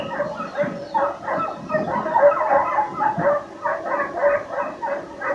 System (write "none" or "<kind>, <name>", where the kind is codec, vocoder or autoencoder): none